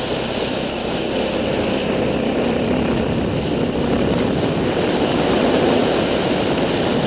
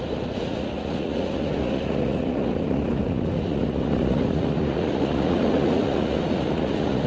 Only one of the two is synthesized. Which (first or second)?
second